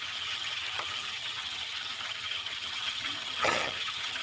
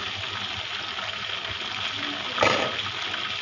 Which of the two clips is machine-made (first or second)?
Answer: first